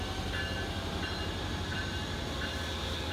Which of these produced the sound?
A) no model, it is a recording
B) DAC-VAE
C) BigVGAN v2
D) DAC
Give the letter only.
A